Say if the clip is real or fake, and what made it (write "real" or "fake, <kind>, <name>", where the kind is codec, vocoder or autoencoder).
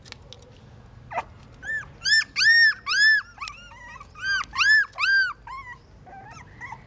real